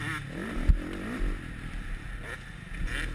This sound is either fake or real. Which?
real